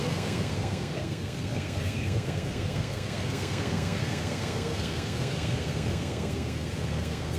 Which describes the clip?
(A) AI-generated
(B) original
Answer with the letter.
A